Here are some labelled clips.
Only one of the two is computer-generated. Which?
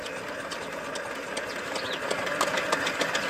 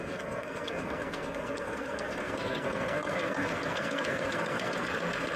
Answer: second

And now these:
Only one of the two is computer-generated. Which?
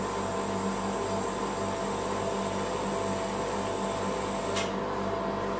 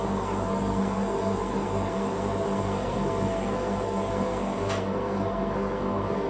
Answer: second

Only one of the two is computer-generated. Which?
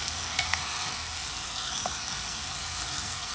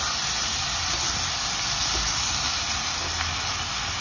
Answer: first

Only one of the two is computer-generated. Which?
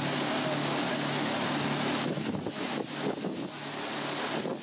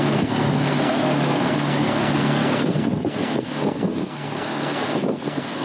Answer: second